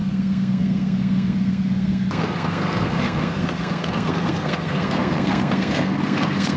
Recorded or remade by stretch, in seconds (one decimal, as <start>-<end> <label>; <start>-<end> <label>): 0.0-6.6 remade